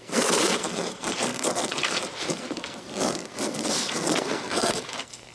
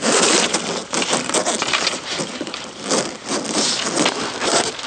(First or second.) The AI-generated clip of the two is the first